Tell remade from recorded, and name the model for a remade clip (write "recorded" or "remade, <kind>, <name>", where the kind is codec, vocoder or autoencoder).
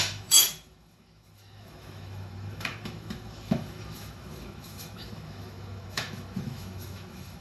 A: remade, autoencoder, DAC-VAE